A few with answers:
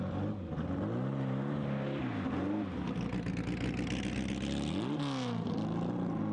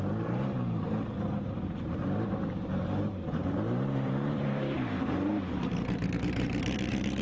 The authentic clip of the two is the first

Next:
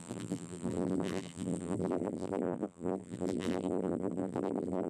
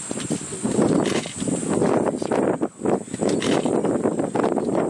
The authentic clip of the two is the second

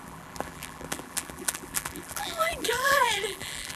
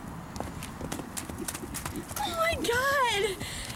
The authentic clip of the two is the second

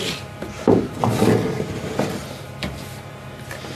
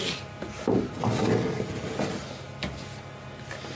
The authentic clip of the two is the second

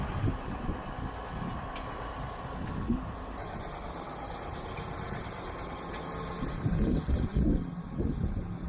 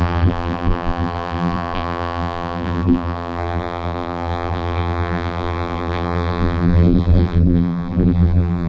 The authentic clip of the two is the first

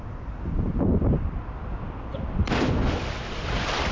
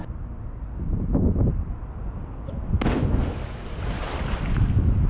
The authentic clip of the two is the second